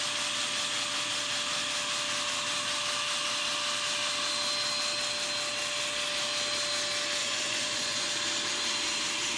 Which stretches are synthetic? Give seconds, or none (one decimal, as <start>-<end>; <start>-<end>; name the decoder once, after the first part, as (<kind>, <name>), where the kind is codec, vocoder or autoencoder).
7.2-8.1 (vocoder, Vocos)